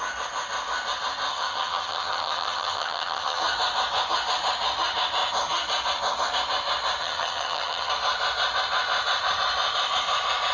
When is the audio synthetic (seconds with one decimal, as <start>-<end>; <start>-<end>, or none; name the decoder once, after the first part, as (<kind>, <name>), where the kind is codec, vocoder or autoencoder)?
1.3-3.4 (vocoder, HiFi-GAN); 7.0-7.9